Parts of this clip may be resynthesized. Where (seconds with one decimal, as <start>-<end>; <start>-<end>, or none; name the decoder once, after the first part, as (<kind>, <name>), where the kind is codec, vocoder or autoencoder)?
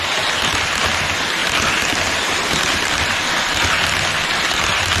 none